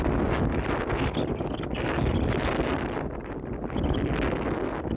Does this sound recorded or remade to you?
recorded